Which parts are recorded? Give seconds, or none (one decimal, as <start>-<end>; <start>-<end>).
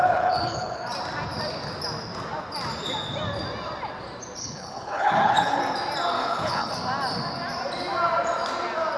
0.8-4.4; 5.6-6.2; 6.7-9.0